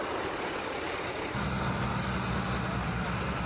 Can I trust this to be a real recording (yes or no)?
no